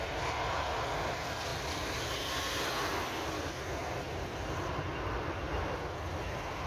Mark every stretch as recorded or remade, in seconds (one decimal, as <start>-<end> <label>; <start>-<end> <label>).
0.0-6.7 recorded